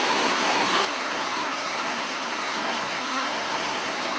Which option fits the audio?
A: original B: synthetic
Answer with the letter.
B